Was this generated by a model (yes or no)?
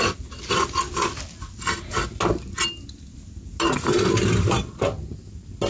no